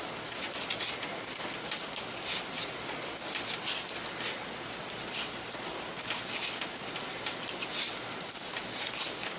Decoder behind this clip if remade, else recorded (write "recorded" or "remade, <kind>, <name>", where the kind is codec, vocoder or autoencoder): recorded